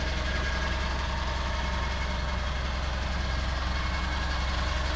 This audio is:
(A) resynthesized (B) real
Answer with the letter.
B